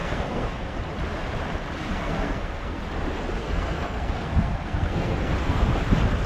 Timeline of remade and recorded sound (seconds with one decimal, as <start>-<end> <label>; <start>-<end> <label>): 0.0-0.8 remade; 0.8-1.9 recorded; 1.9-2.8 remade; 2.8-3.4 recorded; 3.4-5.6 remade; 5.6-6.3 recorded